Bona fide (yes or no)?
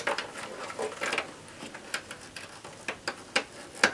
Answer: yes